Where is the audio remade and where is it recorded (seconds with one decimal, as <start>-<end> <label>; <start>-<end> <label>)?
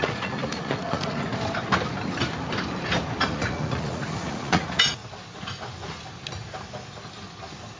0.0-1.3 remade; 1.3-3.3 recorded; 3.3-5.0 remade; 5.0-7.8 recorded